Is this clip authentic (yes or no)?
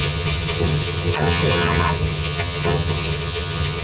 no